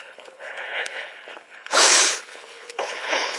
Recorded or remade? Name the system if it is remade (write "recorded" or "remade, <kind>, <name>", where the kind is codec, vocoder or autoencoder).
remade, codec, HILCodec